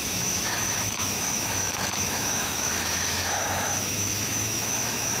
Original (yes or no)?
no